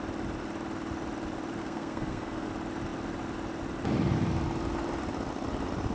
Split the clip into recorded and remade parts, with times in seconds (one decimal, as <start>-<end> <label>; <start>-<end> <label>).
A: 0.0-1.6 recorded; 1.6-2.5 remade; 2.5-5.9 recorded